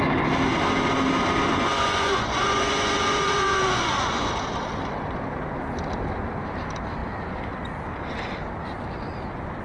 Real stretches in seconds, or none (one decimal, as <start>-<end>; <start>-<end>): 0.0-1.5; 4.3-9.6